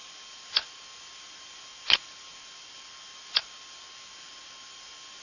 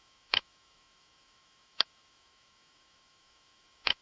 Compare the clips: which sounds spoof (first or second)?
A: second